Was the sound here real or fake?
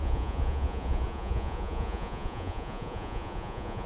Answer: fake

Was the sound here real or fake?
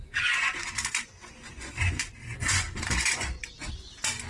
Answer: fake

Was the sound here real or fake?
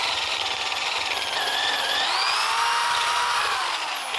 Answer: real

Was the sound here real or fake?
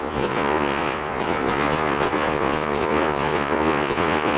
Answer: fake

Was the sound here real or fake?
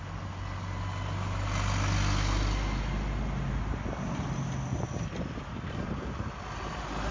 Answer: real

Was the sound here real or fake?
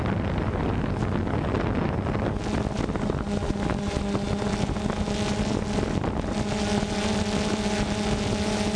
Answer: real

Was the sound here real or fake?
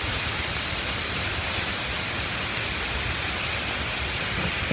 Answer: real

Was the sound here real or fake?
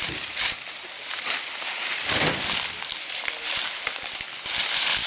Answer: real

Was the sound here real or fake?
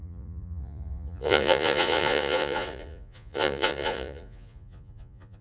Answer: fake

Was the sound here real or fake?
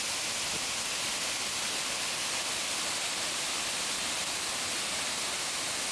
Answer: real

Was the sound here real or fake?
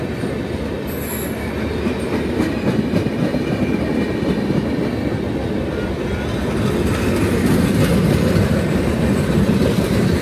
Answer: real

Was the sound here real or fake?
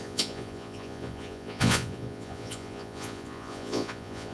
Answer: fake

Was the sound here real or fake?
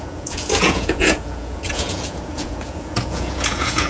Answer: fake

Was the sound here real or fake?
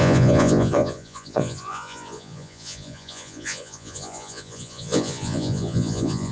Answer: fake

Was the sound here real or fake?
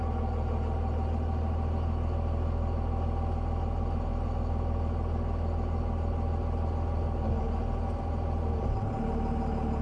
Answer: real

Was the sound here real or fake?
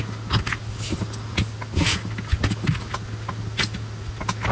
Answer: real